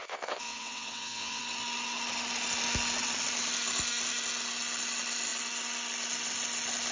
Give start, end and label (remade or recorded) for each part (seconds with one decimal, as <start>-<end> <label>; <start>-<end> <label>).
0.0-1.4 remade; 1.4-6.9 recorded